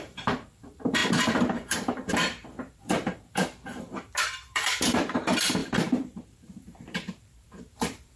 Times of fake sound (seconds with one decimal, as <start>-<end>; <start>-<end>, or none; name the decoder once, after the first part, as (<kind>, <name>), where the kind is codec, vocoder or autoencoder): 0.0-8.2 (vocoder, BigVGAN v2)